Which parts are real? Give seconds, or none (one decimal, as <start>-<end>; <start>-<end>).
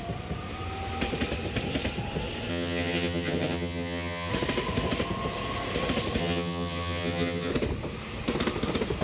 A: 0.0-2.5; 4.3-6.2; 7.5-9.0